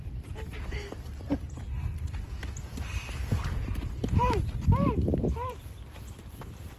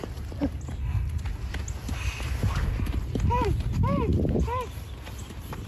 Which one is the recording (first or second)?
second